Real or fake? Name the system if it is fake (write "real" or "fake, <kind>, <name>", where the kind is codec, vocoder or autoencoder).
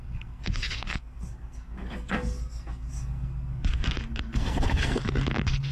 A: fake, codec, SNAC